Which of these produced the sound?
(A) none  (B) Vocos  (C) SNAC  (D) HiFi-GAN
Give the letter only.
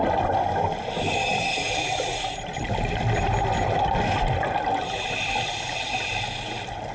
A